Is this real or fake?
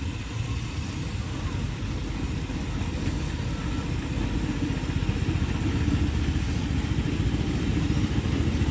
real